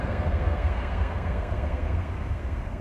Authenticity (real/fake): fake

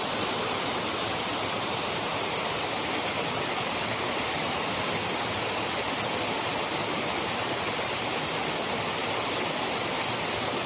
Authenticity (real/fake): real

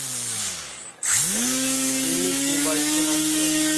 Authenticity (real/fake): fake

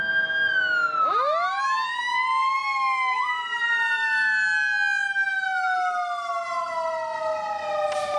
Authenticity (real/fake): real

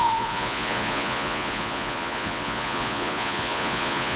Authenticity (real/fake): fake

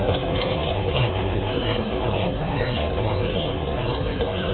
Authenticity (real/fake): fake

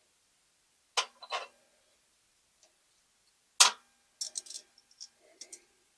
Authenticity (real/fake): real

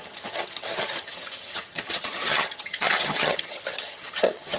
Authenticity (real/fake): fake